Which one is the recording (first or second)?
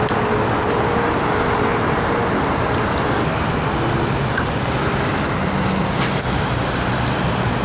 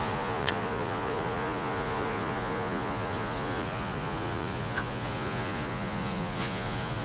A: first